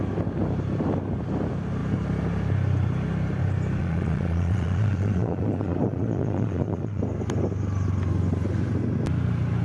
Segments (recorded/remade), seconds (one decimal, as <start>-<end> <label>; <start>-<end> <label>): 0.0-3.8 recorded; 3.8-7.0 remade; 7.0-9.6 recorded